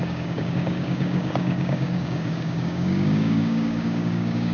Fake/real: fake